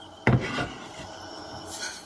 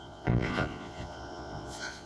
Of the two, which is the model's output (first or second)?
second